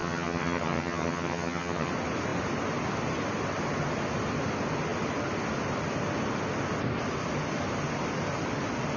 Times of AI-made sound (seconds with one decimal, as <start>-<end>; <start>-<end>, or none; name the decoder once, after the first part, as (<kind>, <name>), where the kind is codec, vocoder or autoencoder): 0.0-1.9 (vocoder, HiFi-GAN)